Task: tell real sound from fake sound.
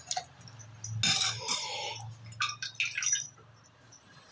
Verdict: real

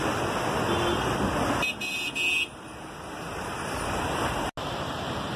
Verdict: real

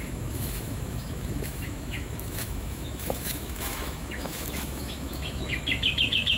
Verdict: fake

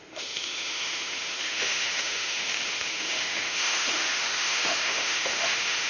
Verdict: fake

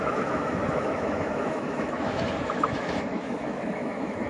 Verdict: fake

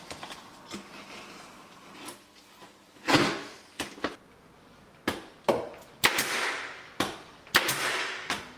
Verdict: real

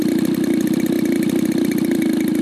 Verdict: real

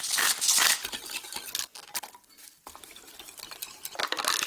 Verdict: real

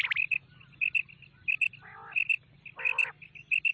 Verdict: real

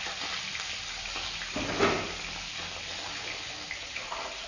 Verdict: real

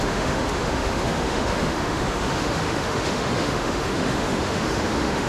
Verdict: fake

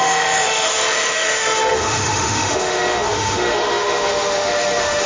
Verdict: fake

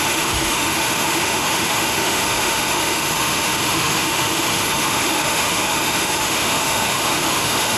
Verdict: fake